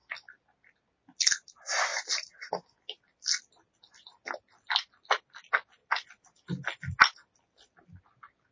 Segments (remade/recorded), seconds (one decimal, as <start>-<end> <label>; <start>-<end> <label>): 0.0-8.5 recorded